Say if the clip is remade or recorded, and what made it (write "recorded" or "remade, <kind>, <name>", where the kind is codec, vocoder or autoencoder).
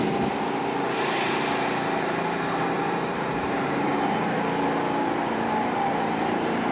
remade, vocoder, BigVGAN v2